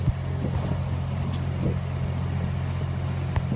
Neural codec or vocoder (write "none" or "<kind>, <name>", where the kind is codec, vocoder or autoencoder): none